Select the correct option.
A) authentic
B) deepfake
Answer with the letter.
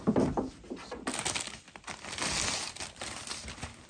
A